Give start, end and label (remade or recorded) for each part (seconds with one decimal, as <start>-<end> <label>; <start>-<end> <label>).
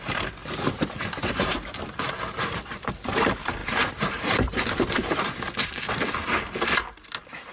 0.0-0.4 recorded; 0.4-1.3 remade; 1.3-3.6 recorded; 3.6-5.9 remade; 5.9-7.5 recorded